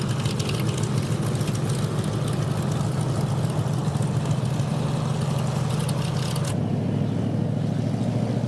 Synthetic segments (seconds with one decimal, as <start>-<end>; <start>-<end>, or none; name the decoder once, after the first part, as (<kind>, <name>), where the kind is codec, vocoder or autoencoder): 3.8-6.5 (vocoder, BigVGAN v2)